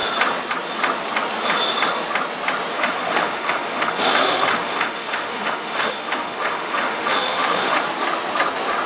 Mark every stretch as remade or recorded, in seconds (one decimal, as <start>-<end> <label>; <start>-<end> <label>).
0.0-2.7 recorded; 2.7-7.8 remade; 7.8-8.9 recorded